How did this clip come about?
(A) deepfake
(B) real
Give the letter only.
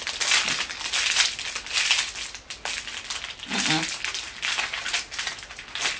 B